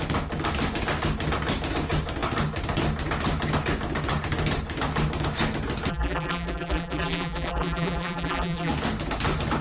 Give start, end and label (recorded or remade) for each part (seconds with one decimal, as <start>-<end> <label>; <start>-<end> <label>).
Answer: 0.0-5.9 recorded; 5.9-8.7 remade; 8.7-9.6 recorded